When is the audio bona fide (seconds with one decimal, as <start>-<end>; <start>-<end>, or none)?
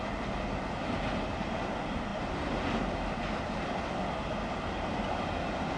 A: 0.0-5.8